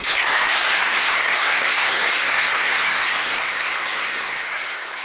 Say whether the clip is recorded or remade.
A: remade